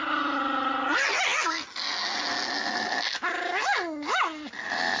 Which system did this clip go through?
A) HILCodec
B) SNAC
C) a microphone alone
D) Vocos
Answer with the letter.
C